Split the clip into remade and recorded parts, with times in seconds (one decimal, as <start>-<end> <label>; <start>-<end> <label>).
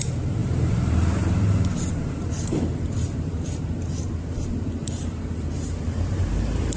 0.0-0.4 recorded; 0.4-3.8 remade; 3.8-4.8 recorded; 4.8-6.2 remade; 6.2-6.8 recorded